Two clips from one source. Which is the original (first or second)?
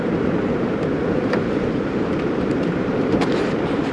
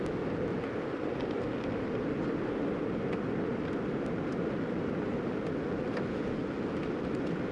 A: second